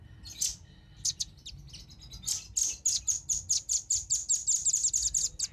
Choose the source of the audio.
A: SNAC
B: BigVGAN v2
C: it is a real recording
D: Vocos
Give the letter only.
C